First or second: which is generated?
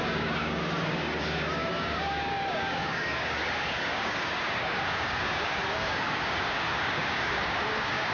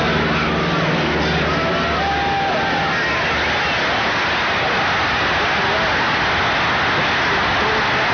first